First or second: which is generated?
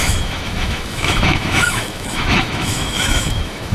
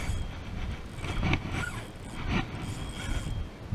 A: first